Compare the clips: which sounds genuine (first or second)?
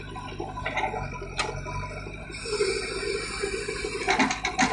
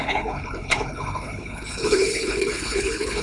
first